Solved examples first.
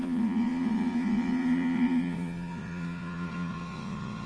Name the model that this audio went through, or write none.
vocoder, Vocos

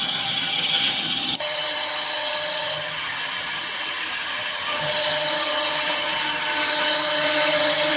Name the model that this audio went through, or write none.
vocoder, HiFi-GAN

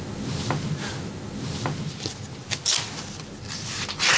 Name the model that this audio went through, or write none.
none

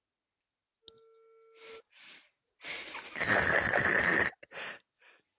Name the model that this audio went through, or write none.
none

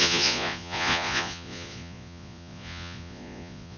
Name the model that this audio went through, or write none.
vocoder, Vocos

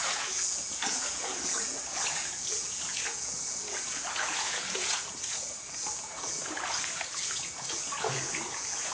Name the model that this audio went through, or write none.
vocoder, Vocos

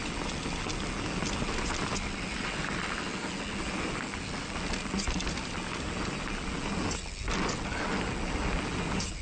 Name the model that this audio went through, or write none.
none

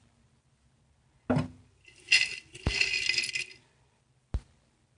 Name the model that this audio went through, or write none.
none